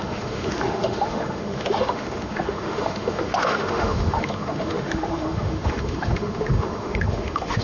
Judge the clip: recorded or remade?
remade